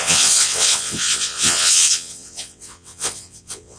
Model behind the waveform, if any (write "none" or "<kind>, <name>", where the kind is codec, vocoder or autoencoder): vocoder, WaveNeXt